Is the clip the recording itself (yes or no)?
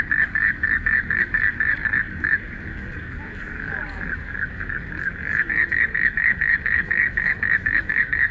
no